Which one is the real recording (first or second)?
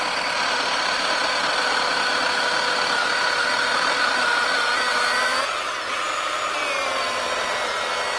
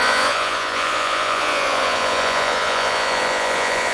first